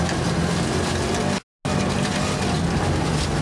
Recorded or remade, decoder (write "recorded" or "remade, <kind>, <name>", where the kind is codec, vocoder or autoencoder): recorded